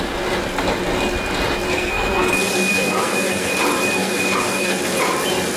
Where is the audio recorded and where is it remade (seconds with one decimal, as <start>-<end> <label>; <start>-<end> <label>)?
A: 0.0-1.7 recorded; 1.7-2.3 remade; 2.3-2.7 recorded; 2.7-3.5 remade; 3.5-4.0 recorded; 4.0-4.8 remade; 4.8-5.6 recorded